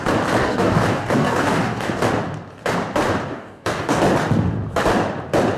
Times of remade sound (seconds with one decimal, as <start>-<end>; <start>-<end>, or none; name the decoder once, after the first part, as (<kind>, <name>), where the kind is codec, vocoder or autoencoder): 0.4-2.1 (codec, DAC); 3.3-4.0